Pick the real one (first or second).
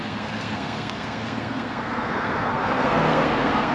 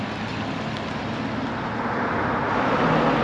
second